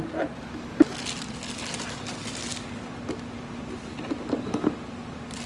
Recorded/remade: recorded